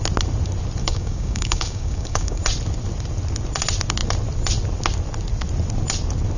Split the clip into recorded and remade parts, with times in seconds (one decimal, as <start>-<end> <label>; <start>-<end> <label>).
0.0-0.8 recorded; 0.8-2.4 remade; 2.4-6.4 recorded